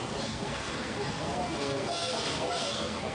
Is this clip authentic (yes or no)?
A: no